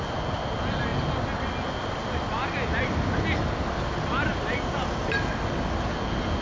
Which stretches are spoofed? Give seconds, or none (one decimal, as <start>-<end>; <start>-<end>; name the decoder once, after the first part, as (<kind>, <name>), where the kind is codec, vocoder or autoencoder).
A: none